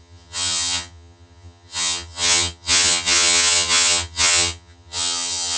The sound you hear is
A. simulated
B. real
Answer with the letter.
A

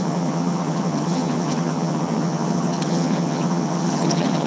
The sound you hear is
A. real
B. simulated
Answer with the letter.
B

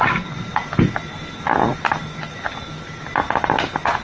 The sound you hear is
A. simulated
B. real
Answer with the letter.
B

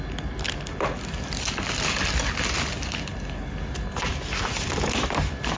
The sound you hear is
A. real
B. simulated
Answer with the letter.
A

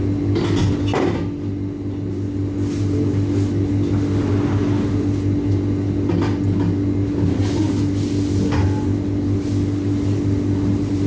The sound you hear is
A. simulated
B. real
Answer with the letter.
B